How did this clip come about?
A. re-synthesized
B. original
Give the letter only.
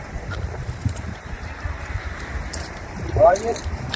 A